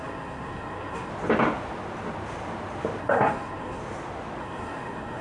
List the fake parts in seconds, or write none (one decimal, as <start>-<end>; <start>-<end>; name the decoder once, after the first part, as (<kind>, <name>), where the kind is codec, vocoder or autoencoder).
0.0-1.1 (codec, SNAC); 3.0-3.8; 4.4-5.2